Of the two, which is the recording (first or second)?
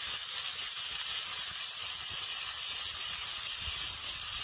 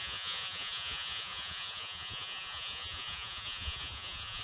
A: first